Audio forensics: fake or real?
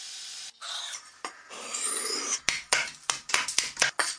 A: real